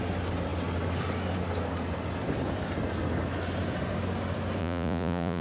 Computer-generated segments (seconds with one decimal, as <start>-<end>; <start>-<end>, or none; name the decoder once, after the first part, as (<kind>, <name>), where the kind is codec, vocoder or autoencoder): 4.6-5.4 (vocoder, Vocos)